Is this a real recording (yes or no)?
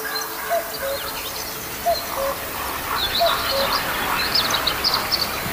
yes